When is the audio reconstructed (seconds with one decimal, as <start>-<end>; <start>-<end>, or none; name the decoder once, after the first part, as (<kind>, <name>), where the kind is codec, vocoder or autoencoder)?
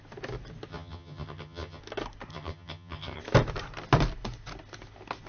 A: 0.7-1.8 (vocoder, HiFi-GAN); 2.3-3.2